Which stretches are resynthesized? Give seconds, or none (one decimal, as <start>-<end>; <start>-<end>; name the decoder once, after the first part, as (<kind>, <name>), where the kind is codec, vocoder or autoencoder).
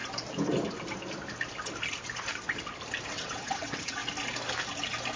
3.1-4.0 (vocoder, WaveNeXt)